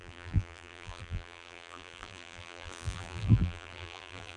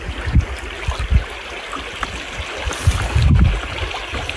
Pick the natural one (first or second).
second